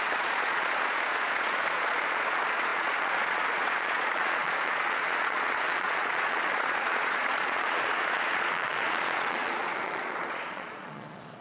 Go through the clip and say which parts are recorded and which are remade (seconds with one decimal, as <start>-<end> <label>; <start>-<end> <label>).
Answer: 0.0-11.4 remade